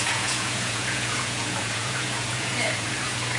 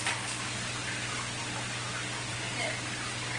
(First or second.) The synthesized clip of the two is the first